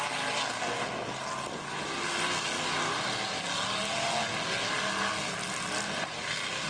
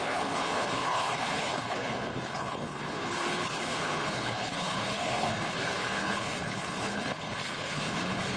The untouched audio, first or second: first